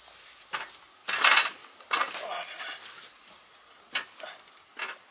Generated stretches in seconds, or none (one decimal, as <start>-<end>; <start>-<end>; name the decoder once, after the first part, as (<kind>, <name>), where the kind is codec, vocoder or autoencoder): none